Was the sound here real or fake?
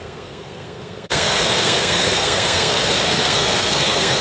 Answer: fake